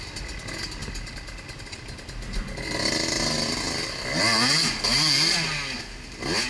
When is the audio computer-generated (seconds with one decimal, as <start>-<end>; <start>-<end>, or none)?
none